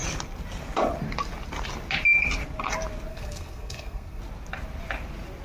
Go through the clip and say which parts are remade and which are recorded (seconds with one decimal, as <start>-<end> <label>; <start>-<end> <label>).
0.0-3.1 recorded; 3.1-4.2 remade; 4.2-5.4 recorded